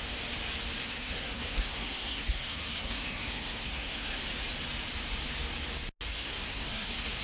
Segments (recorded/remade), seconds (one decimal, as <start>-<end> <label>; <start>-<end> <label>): 0.0-0.8 recorded; 0.8-4.2 remade; 4.2-6.1 recorded; 6.1-7.2 remade